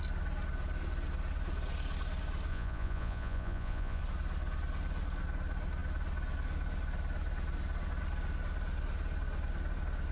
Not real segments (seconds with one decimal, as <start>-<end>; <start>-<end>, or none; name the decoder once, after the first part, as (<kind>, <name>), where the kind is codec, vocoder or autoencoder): 2.5-4.0 (vocoder, Vocos)